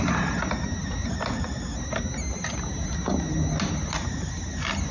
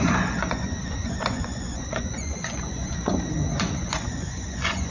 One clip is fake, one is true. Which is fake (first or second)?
second